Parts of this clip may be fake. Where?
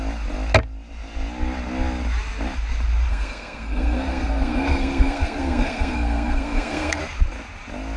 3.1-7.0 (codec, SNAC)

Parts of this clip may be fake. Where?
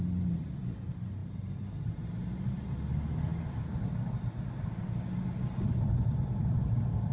none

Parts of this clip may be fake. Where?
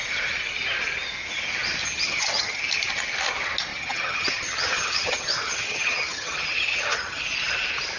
1.8-2.6 (vocoder, HiFi-GAN); 3.7-7.2